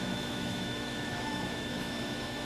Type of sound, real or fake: fake